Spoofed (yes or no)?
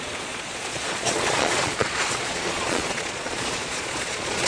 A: yes